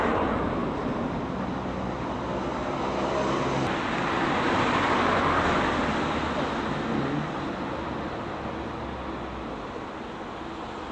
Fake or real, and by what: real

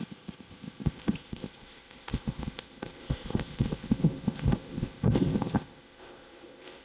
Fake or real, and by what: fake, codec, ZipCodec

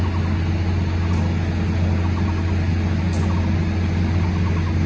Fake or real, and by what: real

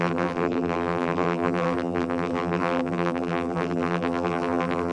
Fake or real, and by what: fake, vocoder, BigVGAN v2